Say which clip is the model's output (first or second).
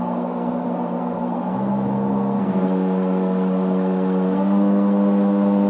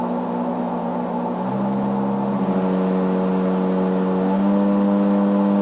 first